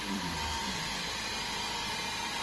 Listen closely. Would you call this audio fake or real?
fake